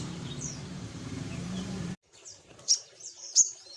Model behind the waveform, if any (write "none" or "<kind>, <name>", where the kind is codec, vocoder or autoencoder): vocoder, BigVGAN v2